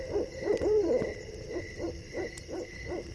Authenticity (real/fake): fake